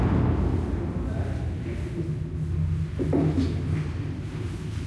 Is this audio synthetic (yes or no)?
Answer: no